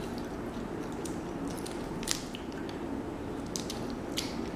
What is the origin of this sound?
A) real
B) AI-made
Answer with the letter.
A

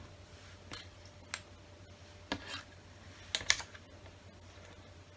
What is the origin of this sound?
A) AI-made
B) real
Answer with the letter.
B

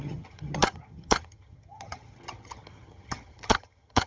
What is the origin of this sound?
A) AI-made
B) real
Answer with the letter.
A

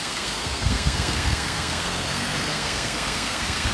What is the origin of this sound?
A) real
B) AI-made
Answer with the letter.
B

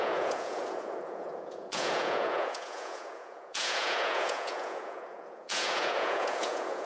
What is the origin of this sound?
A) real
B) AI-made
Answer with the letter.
B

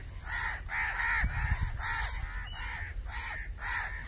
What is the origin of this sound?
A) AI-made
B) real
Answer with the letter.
B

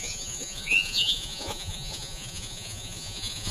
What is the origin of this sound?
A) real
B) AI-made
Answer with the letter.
B